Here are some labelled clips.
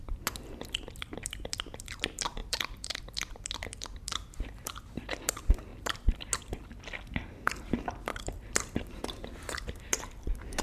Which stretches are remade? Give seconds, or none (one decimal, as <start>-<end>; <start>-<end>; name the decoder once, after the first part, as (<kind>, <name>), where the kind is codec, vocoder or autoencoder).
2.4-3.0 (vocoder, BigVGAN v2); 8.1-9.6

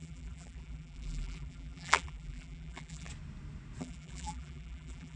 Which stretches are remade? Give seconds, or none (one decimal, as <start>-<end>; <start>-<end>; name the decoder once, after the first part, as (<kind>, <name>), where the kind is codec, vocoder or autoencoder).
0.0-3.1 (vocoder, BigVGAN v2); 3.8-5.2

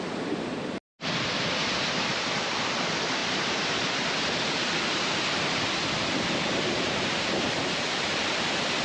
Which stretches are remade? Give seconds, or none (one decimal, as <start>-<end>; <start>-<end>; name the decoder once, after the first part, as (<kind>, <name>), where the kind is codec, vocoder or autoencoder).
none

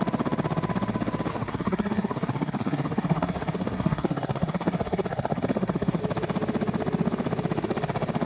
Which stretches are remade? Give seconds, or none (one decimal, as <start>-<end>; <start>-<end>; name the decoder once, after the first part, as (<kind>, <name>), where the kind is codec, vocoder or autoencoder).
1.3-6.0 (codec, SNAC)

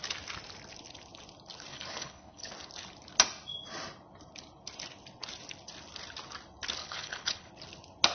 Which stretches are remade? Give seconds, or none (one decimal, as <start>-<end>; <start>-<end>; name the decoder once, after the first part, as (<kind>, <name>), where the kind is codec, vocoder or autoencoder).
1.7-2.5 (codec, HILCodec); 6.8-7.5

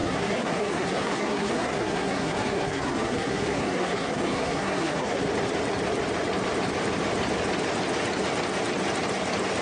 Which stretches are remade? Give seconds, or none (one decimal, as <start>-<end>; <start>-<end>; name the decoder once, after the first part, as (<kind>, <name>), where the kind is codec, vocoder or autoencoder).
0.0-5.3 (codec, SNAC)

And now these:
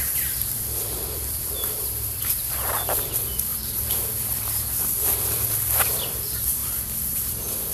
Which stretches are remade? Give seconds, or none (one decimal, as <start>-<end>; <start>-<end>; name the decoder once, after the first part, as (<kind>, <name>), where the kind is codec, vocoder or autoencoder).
0.0-7.7 (vocoder, BigVGAN v2)